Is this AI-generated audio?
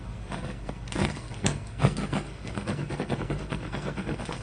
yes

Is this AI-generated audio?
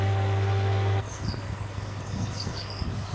yes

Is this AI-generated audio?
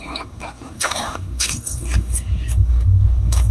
yes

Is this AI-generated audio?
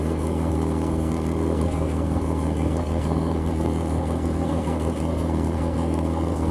yes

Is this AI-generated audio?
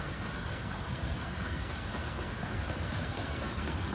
yes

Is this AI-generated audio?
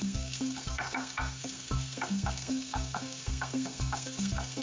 yes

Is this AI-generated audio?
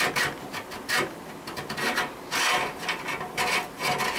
no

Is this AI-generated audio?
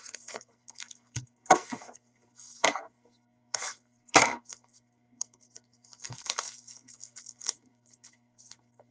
yes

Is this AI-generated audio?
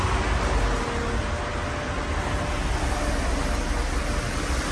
no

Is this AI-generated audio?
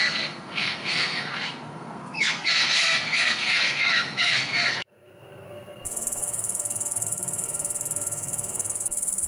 yes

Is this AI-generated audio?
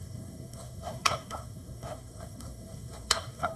yes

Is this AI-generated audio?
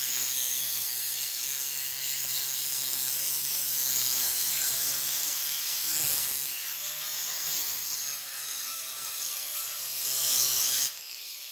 yes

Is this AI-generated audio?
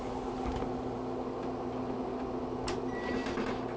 no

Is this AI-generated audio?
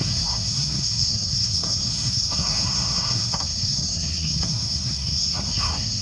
yes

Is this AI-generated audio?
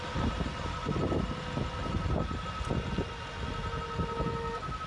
no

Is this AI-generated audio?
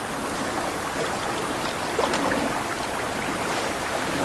no